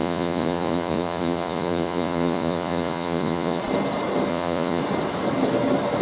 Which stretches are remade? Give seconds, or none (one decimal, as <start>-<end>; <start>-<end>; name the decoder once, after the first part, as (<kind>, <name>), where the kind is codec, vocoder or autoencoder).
0.0-3.6 (vocoder, Vocos); 4.3-4.8